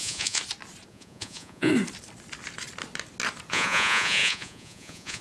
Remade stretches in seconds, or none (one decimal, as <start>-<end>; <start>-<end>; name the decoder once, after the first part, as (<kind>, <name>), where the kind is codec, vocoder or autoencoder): 0.0-0.4 (vocoder, Vocos); 0.9-1.7; 3.5-5.2